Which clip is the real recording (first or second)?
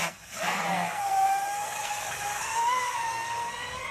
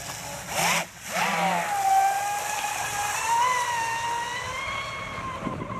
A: second